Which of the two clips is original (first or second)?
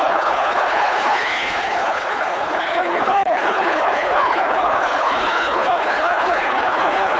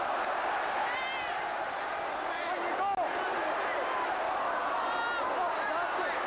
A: second